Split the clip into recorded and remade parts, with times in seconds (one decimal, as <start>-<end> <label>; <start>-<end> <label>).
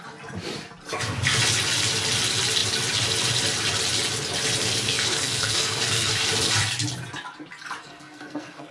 0.0-4.6 recorded; 4.6-6.3 remade; 6.3-7.8 recorded; 7.8-8.7 remade